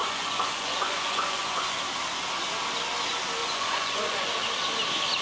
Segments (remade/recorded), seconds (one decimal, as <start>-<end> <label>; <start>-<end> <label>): 0.0-1.8 remade; 1.8-3.4 recorded; 3.4-4.3 remade; 4.3-5.2 recorded